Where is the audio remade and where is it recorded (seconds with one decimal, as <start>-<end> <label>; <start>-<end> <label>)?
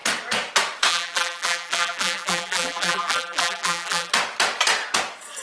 0.0-0.9 recorded; 0.9-4.1 remade; 4.1-5.4 recorded